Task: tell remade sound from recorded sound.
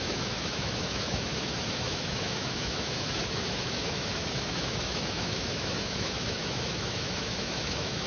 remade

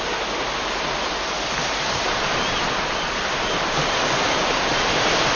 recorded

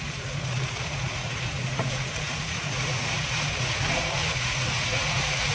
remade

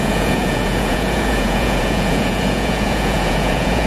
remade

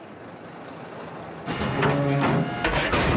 recorded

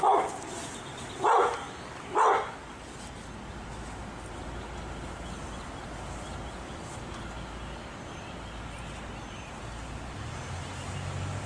recorded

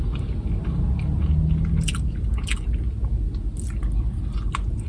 recorded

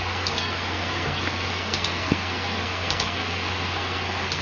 remade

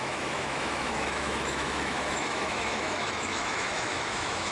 remade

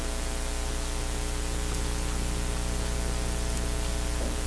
recorded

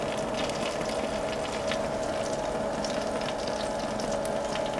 recorded